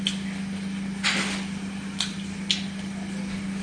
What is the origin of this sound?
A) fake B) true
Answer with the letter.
B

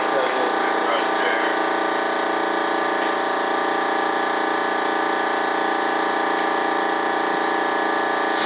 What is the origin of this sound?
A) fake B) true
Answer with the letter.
B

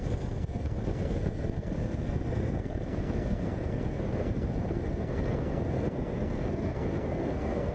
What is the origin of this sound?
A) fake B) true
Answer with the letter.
A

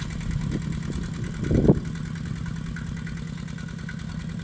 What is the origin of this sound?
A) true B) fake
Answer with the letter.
A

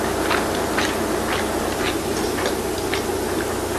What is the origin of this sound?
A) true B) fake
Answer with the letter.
A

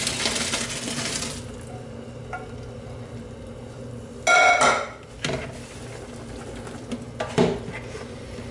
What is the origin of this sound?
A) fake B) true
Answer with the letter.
B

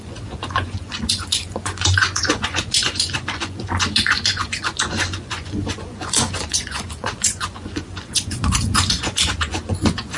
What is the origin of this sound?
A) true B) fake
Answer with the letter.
B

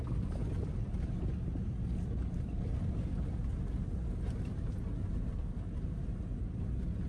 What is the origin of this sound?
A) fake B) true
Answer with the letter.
B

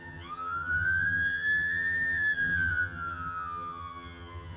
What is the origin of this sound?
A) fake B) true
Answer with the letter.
A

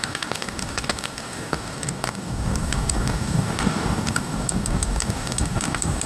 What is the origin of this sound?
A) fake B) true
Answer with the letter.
A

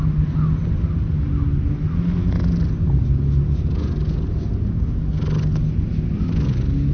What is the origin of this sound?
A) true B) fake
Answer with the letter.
A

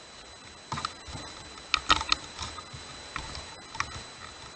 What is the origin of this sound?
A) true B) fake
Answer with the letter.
A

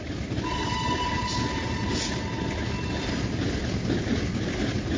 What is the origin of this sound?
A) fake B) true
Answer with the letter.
B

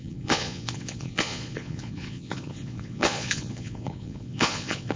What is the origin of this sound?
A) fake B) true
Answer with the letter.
A